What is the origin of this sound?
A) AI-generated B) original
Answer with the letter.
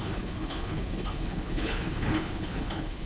A